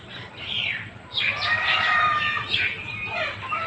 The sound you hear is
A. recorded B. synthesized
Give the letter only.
B